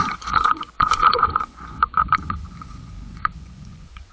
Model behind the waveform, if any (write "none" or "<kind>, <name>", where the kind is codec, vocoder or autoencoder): vocoder, Vocos